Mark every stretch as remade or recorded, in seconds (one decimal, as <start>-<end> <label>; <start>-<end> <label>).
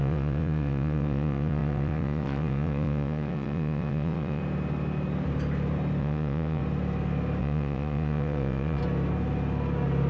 0.0-4.4 remade; 4.4-6.0 recorded; 6.0-6.6 remade; 6.6-7.4 recorded; 7.4-8.8 remade; 8.8-10.1 recorded